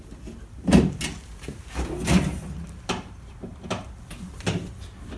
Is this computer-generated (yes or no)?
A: no